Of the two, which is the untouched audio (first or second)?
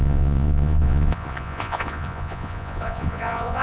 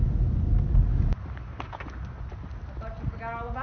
second